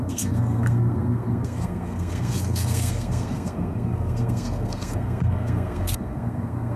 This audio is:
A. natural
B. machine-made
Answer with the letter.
B